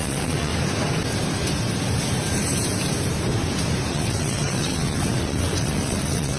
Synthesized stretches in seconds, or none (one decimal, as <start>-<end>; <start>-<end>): 0.0-0.5; 3.9-6.4